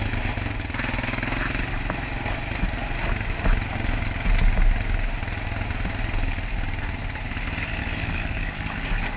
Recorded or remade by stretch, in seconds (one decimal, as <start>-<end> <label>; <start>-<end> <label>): 0.0-7.8 recorded; 7.8-9.2 remade